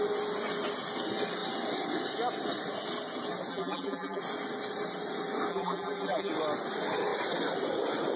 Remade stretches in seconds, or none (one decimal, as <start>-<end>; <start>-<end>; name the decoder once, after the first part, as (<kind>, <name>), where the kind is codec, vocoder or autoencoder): 3.5-4.2 (vocoder, BigVGAN v2); 5.5-6.3